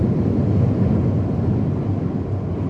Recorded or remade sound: recorded